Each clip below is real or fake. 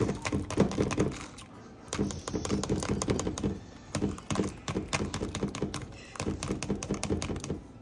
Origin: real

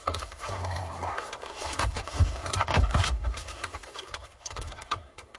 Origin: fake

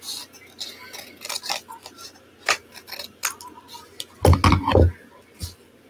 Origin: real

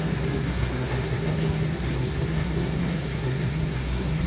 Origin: fake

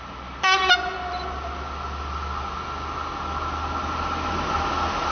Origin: real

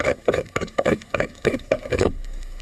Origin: fake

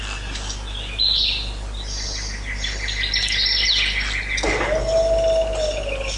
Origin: real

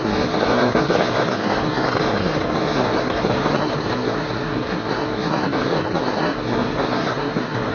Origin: fake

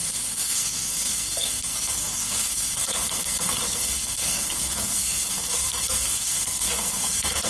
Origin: fake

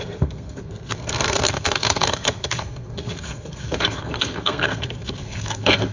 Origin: fake